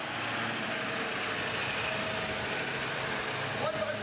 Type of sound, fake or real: real